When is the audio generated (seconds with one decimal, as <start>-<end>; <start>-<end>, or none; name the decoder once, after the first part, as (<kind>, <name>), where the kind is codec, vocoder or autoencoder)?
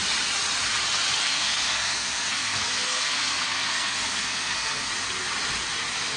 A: 1.2-4.9 (codec, SNAC)